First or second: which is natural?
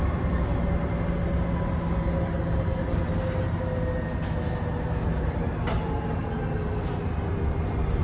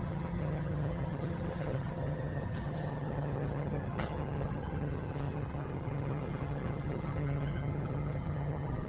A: first